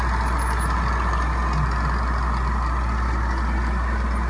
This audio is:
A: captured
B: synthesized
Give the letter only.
A